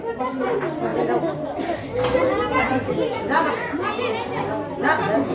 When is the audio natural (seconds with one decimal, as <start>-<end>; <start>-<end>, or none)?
0.0-5.3